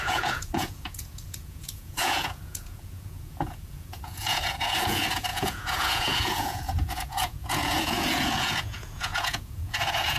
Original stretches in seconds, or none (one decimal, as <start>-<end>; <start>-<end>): none